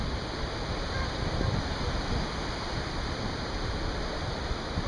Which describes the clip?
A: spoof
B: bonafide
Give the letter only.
B